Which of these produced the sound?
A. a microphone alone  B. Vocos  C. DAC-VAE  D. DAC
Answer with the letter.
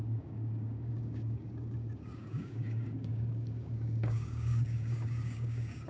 D